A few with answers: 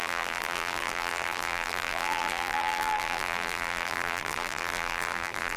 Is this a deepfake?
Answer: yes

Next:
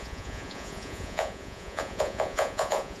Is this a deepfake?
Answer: yes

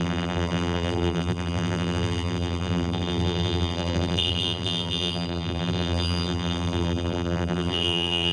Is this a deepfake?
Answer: yes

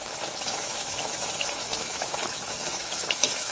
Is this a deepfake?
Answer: yes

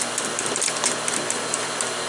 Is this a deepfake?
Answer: no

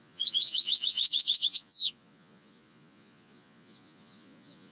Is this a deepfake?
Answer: yes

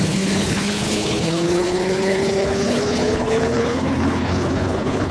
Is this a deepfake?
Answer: yes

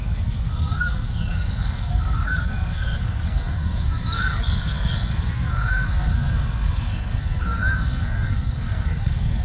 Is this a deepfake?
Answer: yes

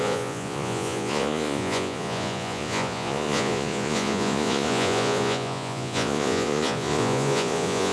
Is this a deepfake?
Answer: yes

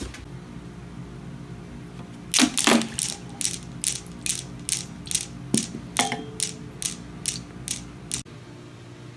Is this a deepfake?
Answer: no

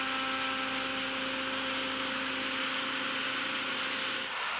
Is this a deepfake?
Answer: no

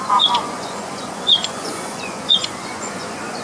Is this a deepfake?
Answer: yes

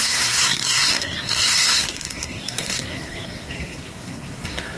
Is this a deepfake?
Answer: yes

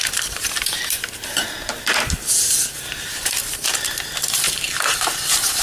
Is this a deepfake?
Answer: yes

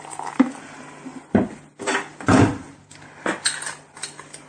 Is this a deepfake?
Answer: no